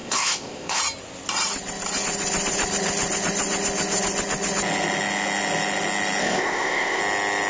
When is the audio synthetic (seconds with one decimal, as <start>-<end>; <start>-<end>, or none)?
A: 0.0-0.8; 6.2-7.0